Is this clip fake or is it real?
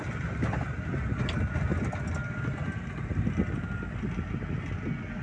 real